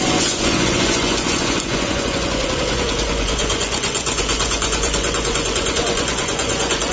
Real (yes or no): no